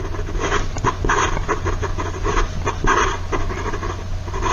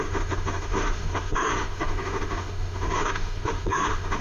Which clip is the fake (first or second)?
second